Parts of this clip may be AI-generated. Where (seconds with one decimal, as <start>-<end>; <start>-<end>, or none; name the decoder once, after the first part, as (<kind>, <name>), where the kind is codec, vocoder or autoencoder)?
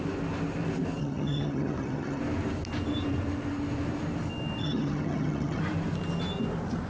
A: 1.0-2.2 (vocoder, HiFi-GAN); 4.6-5.6